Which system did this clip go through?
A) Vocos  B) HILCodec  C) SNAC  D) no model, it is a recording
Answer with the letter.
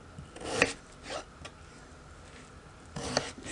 D